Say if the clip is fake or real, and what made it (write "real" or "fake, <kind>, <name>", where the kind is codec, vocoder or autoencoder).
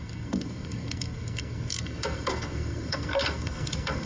fake, codec, SNAC